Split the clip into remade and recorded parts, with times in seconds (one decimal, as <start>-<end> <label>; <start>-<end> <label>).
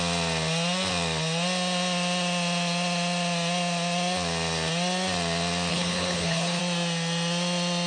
0.0-5.7 recorded; 5.7-6.6 remade; 6.6-7.9 recorded